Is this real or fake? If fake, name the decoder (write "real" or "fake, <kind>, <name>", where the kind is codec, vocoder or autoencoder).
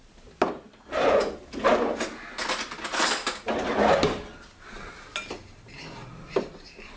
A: real